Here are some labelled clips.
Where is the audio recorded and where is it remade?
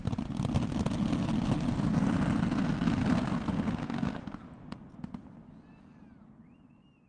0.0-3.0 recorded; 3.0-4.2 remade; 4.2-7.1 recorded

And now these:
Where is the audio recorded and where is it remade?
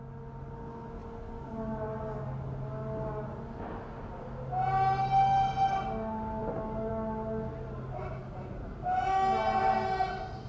0.0-10.5 recorded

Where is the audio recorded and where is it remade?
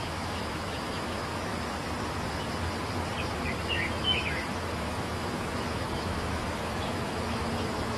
0.0-1.5 remade; 1.5-3.7 recorded; 3.7-8.0 remade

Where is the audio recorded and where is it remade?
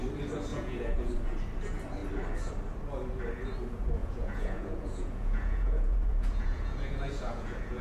0.0-0.5 recorded; 0.5-1.1 remade; 1.1-4.0 recorded; 4.0-7.8 remade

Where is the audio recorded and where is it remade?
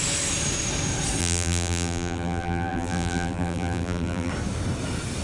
0.0-1.2 recorded; 1.2-4.3 remade; 4.3-5.2 recorded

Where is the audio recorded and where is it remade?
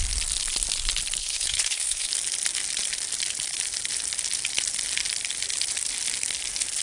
0.0-1.2 recorded; 1.2-2.1 remade; 2.1-6.8 recorded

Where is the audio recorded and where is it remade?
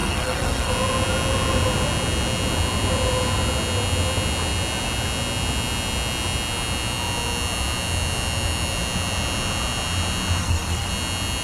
0.0-0.7 remade; 0.7-10.4 recorded; 10.4-10.9 remade; 10.9-11.4 recorded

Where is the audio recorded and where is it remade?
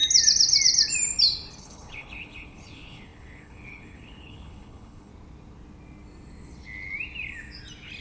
0.0-1.6 recorded; 1.6-5.1 remade; 5.1-8.0 recorded